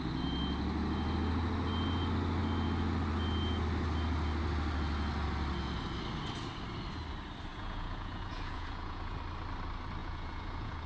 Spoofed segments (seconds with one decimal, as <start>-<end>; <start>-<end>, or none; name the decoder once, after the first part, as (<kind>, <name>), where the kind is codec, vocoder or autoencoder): 7.5-9.2 (vocoder, Vocos); 10.0-10.9